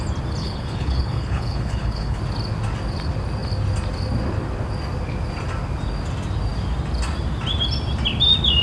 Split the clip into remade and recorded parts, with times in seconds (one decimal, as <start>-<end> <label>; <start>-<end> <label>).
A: 0.0-0.4 recorded; 0.4-2.2 remade; 2.2-8.6 recorded